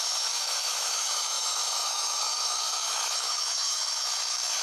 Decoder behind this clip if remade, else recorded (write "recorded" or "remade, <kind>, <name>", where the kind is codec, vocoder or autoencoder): remade, autoencoder, DAC-VAE